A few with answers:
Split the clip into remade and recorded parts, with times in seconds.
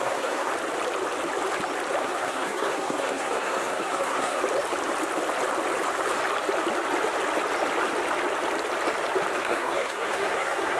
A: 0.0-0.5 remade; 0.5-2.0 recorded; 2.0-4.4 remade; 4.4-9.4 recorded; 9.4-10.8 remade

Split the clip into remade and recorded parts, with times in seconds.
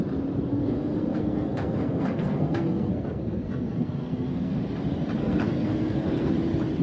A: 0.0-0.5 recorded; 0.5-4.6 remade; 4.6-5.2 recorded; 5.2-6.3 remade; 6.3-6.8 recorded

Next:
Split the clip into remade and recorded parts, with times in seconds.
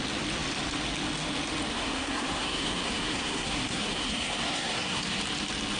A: 0.0-1.7 recorded; 1.7-5.2 remade; 5.2-5.8 recorded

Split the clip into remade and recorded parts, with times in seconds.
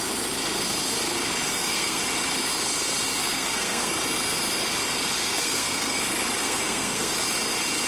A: 0.0-1.5 recorded; 1.5-2.0 remade; 2.0-3.2 recorded; 3.2-3.9 remade; 3.9-5.2 recorded; 5.2-6.0 remade; 6.0-6.4 recorded; 6.4-7.1 remade; 7.1-7.9 recorded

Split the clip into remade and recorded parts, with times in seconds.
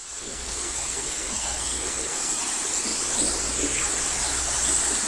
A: 0.0-2.4 remade; 2.4-5.1 recorded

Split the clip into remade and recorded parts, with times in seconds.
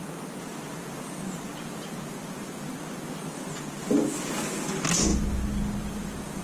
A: 0.0-6.4 recorded